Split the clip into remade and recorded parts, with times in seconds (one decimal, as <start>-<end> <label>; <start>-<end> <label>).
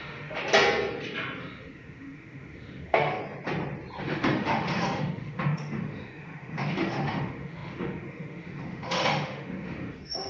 0.0-0.4 remade; 0.4-1.4 recorded; 1.4-3.2 remade; 3.2-4.0 recorded; 4.0-10.3 remade